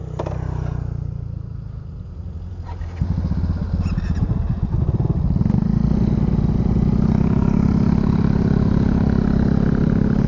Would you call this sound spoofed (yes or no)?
no